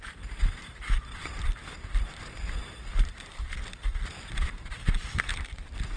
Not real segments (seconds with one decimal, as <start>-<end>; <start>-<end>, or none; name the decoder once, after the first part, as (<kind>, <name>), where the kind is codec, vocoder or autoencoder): 0.0-4.6 (vocoder, BigVGAN v2); 5.3-6.0